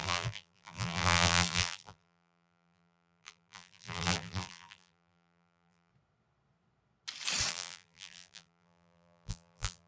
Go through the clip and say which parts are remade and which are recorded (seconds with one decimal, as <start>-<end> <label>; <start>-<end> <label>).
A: 0.0-5.9 remade; 5.9-7.5 recorded; 7.5-9.9 remade